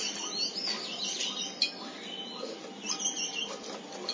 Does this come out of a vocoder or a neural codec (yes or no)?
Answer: no